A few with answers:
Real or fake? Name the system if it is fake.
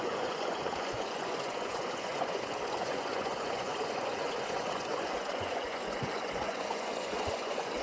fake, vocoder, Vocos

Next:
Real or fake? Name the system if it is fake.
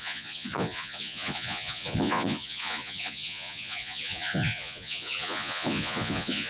fake, vocoder, Vocos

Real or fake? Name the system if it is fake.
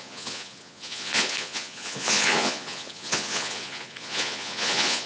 fake, vocoder, Vocos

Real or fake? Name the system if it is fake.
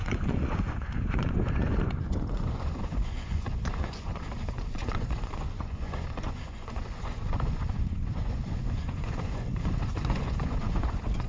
fake, vocoder, Vocos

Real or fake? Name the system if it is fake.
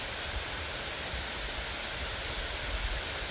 real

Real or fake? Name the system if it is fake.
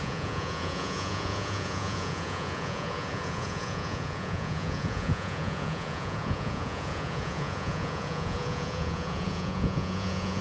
fake, vocoder, Vocos